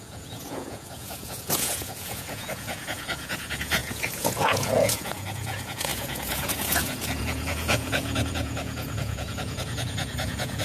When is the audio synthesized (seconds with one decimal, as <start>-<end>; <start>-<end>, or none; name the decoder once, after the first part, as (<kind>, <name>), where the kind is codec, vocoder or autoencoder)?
0.0-10.6 (vocoder, Vocos)